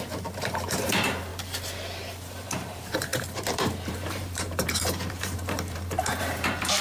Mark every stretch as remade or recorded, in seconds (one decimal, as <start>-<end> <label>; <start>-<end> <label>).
0.0-1.3 remade; 1.3-2.1 recorded; 2.1-6.8 remade